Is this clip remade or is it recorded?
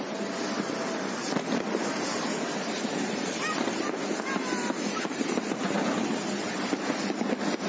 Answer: recorded